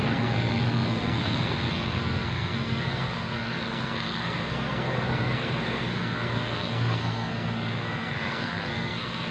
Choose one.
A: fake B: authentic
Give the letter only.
A